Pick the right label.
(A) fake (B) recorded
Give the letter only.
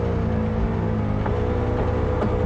B